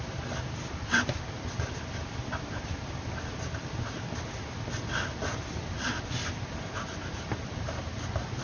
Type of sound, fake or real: real